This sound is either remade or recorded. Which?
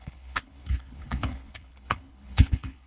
remade